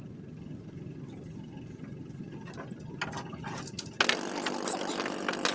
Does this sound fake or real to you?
real